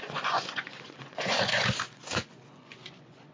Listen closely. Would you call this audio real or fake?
fake